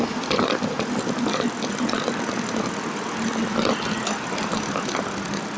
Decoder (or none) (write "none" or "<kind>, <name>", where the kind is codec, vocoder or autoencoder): none